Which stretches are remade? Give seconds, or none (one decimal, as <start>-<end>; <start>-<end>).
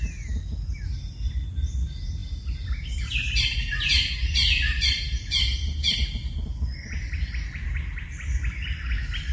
none